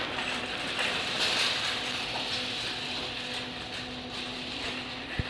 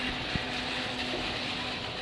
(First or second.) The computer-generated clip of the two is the first